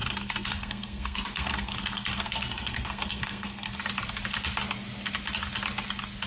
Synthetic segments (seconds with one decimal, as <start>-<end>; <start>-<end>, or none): 0.0-3.8